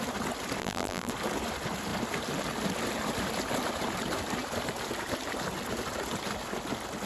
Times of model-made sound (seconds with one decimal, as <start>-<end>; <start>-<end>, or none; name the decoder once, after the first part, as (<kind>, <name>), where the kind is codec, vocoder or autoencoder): 0.6-1.1 (vocoder, BigVGAN v2)